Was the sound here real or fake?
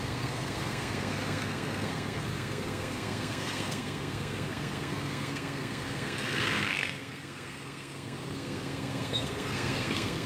fake